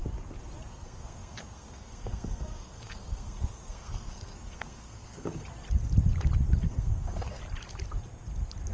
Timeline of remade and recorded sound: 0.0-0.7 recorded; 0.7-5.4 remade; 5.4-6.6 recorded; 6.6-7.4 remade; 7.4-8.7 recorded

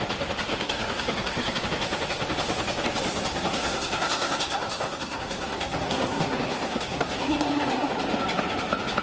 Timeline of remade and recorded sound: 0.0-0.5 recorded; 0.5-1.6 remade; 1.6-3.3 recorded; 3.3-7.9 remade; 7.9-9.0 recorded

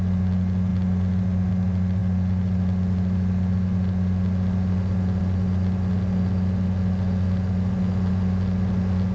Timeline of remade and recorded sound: 0.0-9.1 recorded

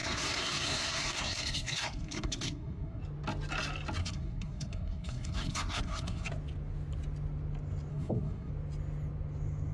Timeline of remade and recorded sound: 0.0-3.0 remade; 3.0-4.0 recorded; 4.0-6.3 remade; 6.3-7.9 recorded; 7.9-8.5 remade; 8.5-9.7 recorded

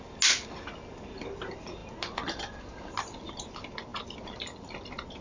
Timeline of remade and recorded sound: 0.0-5.2 recorded

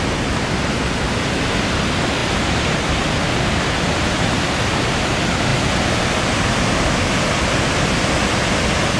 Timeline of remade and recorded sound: 0.0-9.0 recorded

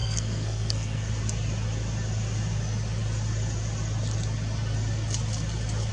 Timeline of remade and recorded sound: 0.0-1.1 remade; 1.1-5.9 recorded